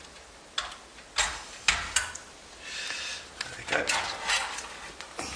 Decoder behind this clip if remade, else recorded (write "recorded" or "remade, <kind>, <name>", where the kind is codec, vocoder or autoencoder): recorded